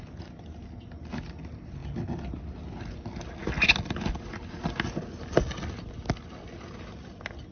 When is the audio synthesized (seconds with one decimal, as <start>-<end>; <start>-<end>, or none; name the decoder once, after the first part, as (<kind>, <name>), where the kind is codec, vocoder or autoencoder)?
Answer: none